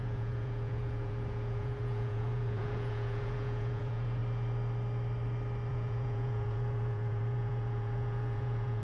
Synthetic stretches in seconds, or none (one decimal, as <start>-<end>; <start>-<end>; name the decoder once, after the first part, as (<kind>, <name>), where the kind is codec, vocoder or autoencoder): 0.0-4.2 (vocoder, Vocos); 5.7-8.8